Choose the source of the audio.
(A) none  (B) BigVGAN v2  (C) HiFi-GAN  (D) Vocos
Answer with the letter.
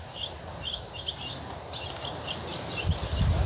A